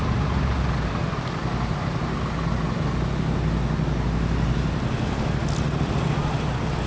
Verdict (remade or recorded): recorded